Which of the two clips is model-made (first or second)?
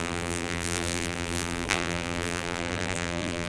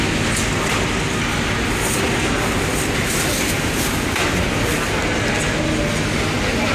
first